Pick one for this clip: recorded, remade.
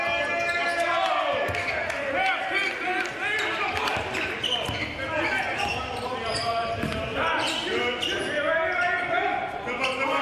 recorded